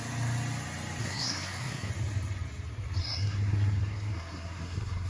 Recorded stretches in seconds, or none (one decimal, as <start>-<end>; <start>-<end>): 0.0-1.0; 1.9-3.0

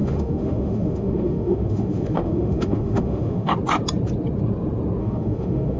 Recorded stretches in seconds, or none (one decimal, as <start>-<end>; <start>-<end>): 3.5-5.0

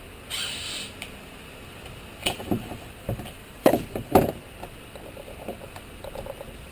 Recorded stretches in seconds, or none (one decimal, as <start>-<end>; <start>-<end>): 0.0-2.2; 4.3-6.7

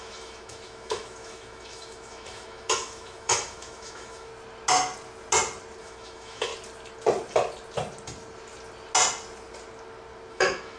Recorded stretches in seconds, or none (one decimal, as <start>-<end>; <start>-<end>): 4.3-5.8; 6.5-10.3